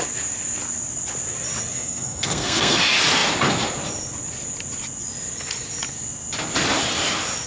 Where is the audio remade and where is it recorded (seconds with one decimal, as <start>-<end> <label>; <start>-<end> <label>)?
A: 0.0-1.7 recorded; 1.7-2.8 remade; 2.8-7.5 recorded